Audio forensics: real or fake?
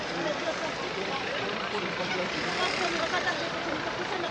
fake